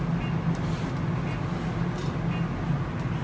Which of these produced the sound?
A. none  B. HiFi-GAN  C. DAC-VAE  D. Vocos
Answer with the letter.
A